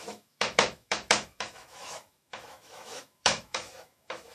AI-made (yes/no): yes